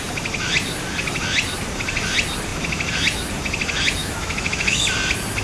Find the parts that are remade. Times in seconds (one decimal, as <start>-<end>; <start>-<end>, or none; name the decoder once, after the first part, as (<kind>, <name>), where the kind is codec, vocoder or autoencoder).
4.0-4.8 (autoencoder, DAC-VAE)